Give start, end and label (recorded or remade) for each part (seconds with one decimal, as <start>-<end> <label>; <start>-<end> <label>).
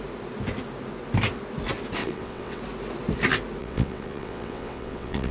0.0-2.0 recorded; 2.0-2.6 remade; 2.6-3.6 recorded; 3.6-5.3 remade